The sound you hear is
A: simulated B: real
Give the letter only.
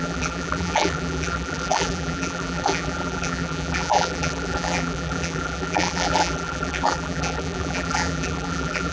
A